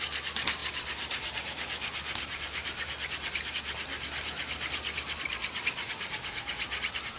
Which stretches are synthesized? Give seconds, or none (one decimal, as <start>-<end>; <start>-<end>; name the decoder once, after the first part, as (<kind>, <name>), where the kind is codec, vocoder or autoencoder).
none

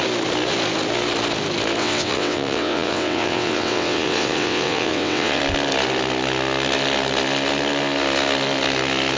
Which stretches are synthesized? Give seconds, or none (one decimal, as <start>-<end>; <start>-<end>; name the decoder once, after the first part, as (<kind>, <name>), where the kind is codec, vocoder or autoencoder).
1.8-5.4 (vocoder, WaveNeXt)

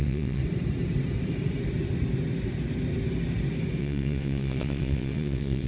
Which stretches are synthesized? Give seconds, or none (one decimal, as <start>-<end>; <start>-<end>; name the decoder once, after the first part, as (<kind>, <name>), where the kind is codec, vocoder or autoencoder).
0.0-0.4 (vocoder, WaveNeXt); 3.8-5.7

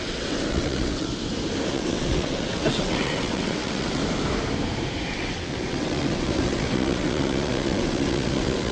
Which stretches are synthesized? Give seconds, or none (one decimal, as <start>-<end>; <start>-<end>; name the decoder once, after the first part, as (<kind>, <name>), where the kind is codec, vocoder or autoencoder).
0.0-1.1 (vocoder, WaveNeXt); 1.7-4.0; 5.1-8.7

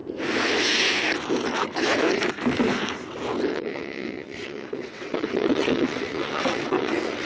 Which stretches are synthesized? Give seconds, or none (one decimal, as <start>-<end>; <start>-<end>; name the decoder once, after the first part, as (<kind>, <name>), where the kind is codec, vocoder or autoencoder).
3.5-7.3 (vocoder, WaveNeXt)

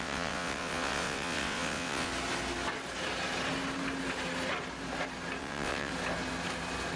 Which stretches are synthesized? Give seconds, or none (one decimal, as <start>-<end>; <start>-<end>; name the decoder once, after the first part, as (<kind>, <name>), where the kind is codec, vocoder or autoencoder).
0.0-2.1 (vocoder, WaveNeXt); 5.4-5.9

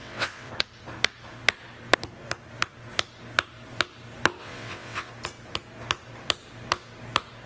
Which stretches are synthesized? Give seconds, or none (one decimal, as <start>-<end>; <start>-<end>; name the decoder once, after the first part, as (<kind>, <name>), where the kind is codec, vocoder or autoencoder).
0.0-0.5 (vocoder, WaveNeXt); 4.4-5.1